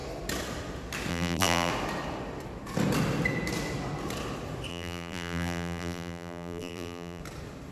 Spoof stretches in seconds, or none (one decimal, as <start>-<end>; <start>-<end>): 1.1-1.7; 4.7-7.2